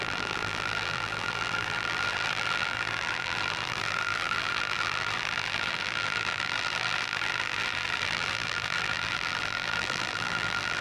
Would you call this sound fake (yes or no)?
yes